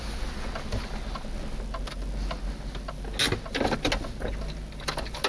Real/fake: real